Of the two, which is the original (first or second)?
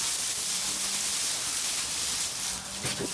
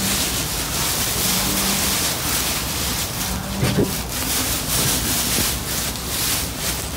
second